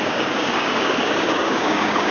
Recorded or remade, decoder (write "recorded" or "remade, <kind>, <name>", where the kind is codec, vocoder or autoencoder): remade, codec, DAC